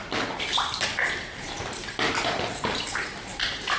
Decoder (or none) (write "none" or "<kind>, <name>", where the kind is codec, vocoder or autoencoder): none